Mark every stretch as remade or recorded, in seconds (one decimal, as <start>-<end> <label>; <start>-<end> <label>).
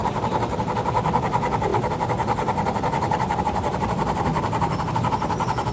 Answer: 0.0-1.1 recorded; 1.1-1.7 remade; 1.7-3.4 recorded; 3.4-4.3 remade; 4.3-5.7 recorded